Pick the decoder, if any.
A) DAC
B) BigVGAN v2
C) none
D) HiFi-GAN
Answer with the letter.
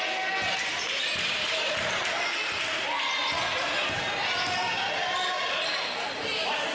C